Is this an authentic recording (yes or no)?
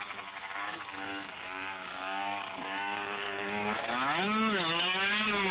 no